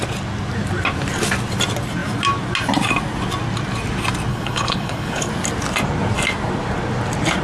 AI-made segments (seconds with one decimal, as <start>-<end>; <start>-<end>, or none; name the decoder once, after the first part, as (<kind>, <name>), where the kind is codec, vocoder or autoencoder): 4.3-5.3 (codec, HILCodec)

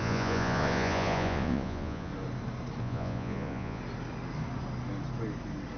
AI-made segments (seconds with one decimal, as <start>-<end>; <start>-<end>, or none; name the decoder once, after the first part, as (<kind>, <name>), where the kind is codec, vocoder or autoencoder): 0.0-2.1 (vocoder, Vocos); 2.8-3.8

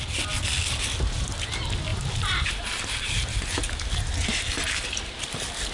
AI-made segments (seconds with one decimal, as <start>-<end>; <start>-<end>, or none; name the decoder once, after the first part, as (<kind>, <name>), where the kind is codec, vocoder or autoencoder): 1.9-5.3 (vocoder, BigVGAN v2)

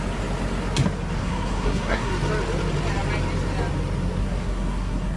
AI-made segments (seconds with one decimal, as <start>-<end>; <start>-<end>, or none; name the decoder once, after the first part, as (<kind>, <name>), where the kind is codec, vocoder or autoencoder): 1.2-2.1 (codec, SNAC); 4.2-5.2

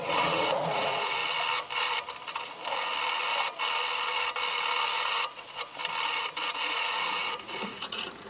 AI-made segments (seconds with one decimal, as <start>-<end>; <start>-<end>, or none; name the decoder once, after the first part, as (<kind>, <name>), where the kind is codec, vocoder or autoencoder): 0.0-1.2 (vocoder, Vocos); 5.1-5.8; 6.4-8.3

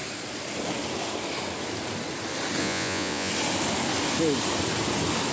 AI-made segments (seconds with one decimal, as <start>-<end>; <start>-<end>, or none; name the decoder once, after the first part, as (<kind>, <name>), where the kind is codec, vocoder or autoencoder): 2.6-3.3 (vocoder, Vocos)

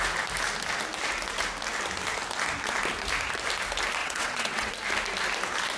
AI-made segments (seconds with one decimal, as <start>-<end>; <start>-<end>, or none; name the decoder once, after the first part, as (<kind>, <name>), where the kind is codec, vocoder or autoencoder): 4.0-4.7 (vocoder, WaveNeXt)